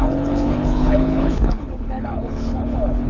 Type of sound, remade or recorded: remade